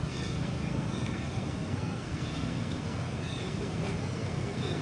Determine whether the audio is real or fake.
fake